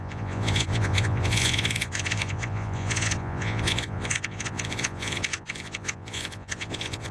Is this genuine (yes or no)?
no